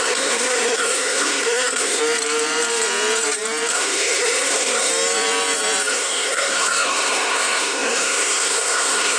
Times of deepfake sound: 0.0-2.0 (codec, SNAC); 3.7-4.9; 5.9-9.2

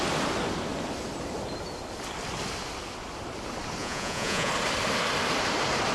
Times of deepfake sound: 3.8-4.5 (vocoder, Vocos)

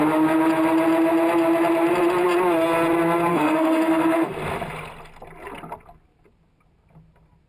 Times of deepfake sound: 3.3-4.3 (codec, SNAC)

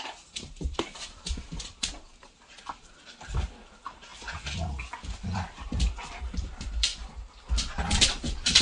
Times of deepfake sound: 0.0-6.9 (vocoder, BigVGAN v2); 8.1-8.6

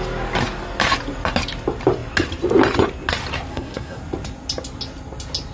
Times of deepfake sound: 3.5-4.0 (codec, SNAC)

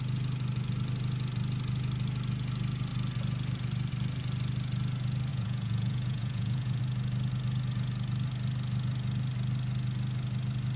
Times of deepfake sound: 5.3-6.8 (vocoder, Vocos)

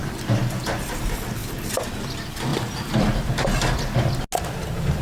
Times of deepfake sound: 0.0-1.0 (vocoder, BigVGAN v2); 1.4-1.9; 2.5-4.2

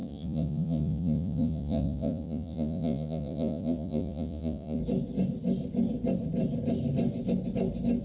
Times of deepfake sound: 0.0-4.8 (vocoder, Vocos)